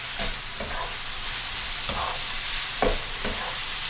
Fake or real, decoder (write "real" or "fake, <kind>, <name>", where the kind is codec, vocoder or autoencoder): real